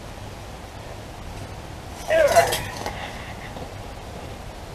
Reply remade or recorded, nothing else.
recorded